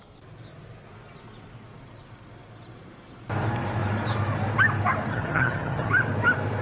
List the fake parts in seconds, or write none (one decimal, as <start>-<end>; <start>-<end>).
5.1-5.9